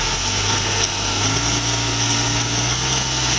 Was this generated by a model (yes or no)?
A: yes